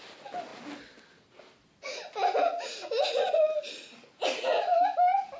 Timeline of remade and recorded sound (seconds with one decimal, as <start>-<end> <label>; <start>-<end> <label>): 0.0-5.4 recorded